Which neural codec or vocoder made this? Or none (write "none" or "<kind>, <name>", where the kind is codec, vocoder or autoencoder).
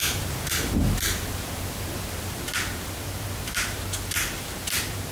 none